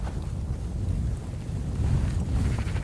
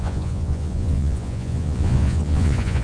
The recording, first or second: first